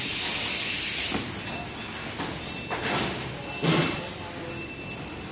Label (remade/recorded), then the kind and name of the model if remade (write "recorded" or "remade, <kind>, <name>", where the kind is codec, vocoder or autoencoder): recorded